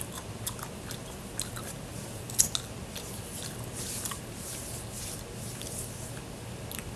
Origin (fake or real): real